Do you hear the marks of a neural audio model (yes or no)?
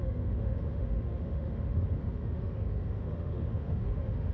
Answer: yes